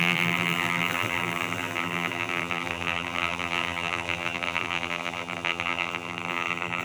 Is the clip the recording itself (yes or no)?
no